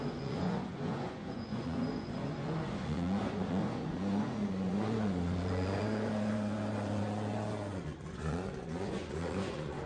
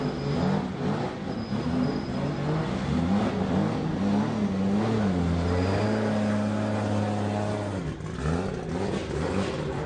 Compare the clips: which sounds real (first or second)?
second